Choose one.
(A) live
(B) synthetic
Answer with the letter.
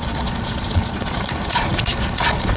B